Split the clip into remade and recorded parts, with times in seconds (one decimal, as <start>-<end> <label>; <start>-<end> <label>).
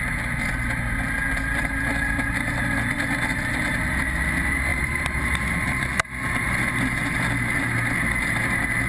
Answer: 0.0-4.7 recorded; 4.7-6.8 remade; 6.8-8.9 recorded